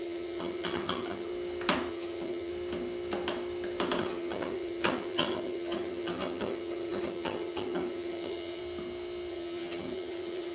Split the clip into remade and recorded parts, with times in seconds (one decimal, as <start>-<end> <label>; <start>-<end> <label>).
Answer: 0.0-1.3 remade; 1.3-1.9 recorded; 1.9-2.5 remade; 2.5-4.0 recorded; 4.0-8.6 remade; 8.6-9.3 recorded; 9.3-10.5 remade